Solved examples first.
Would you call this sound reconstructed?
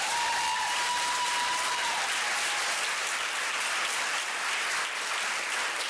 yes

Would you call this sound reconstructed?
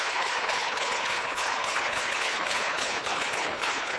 yes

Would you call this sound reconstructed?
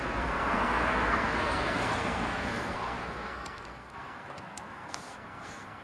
yes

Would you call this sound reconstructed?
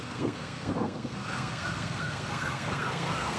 yes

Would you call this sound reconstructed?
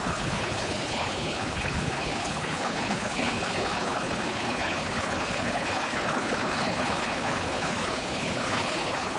yes